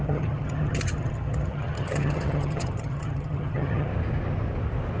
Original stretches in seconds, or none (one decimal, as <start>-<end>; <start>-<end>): 3.9-5.0